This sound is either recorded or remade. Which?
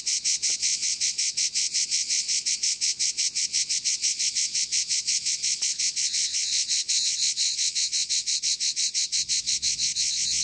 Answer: remade